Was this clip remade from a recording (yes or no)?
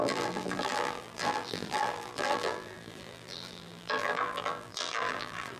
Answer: yes